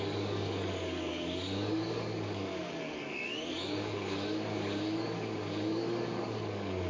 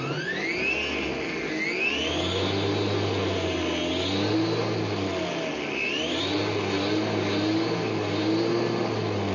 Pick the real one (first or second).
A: second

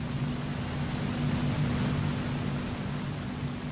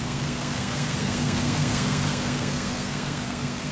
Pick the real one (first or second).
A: first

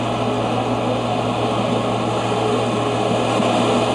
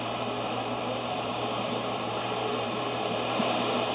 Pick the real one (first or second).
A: first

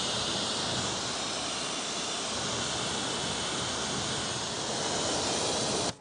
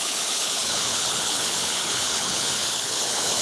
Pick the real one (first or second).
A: first